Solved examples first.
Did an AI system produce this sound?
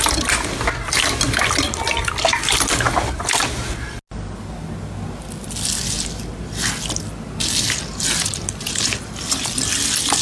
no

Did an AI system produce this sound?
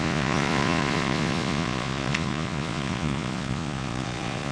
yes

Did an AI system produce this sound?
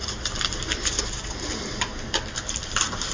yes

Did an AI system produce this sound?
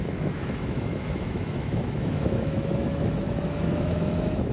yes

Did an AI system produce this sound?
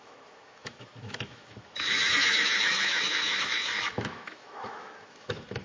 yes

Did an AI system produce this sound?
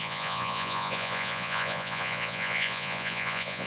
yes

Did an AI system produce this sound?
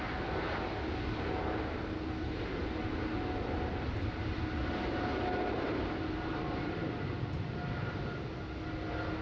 no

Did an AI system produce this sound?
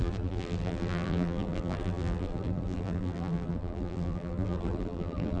yes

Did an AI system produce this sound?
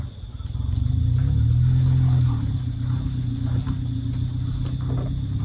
no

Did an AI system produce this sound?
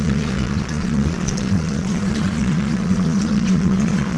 yes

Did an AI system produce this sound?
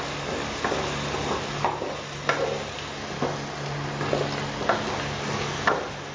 no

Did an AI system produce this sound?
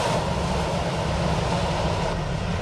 no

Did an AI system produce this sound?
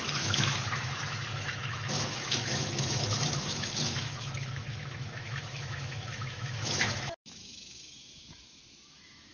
yes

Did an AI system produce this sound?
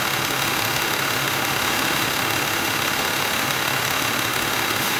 yes